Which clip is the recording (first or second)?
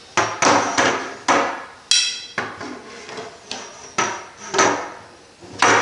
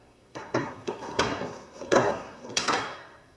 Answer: first